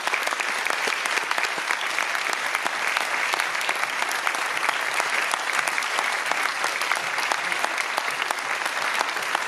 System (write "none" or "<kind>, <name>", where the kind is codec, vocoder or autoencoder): none